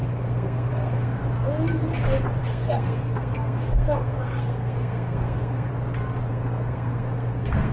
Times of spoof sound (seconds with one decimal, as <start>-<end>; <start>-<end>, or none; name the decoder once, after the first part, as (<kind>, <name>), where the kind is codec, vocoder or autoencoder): 0.0-1.2 (codec, SNAC); 2.4-5.7; 6.3-7.7